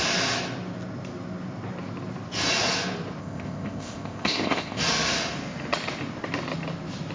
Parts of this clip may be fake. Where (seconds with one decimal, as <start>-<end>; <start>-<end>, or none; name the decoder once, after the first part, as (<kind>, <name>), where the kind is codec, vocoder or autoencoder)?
3.2-4.8 (codec, ZipCodec)